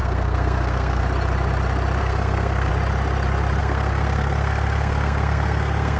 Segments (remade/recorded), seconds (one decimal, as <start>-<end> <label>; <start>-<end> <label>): 0.0-1.0 remade; 1.0-2.0 recorded; 2.0-2.7 remade; 2.7-3.6 recorded; 3.6-6.0 remade

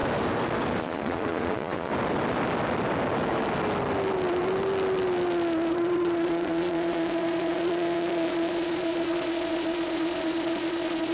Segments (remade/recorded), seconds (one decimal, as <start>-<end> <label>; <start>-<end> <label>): 0.0-0.8 recorded; 0.8-1.9 remade; 1.9-5.7 recorded; 5.7-11.1 remade